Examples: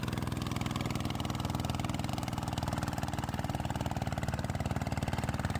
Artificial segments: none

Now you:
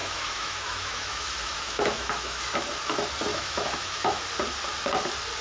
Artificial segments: 0.0-2.4 (autoencoder, DAC-VAE); 3.3-4.2

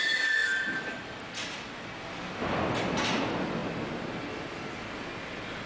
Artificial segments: none

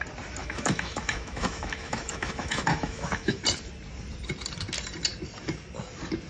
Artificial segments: 0.4-3.4 (autoencoder, DAC-VAE)

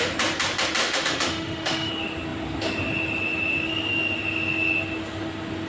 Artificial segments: 0.8-1.9 (autoencoder, DAC-VAE)

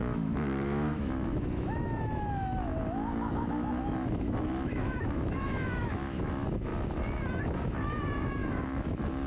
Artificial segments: 0.0-6.7 (autoencoder, DAC-VAE); 7.4-9.3